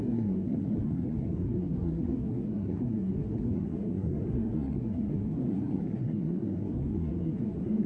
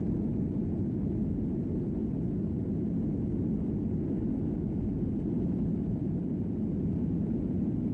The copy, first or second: first